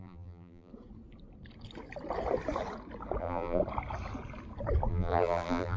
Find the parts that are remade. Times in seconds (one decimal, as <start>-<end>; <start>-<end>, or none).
0.0-0.7; 3.2-3.6; 4.9-5.8